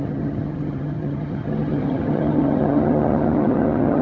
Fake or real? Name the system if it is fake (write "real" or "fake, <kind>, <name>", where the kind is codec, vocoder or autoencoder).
fake, vocoder, HiFi-GAN